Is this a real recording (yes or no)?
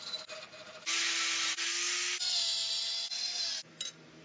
yes